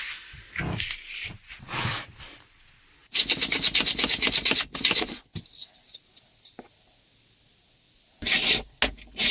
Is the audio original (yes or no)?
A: yes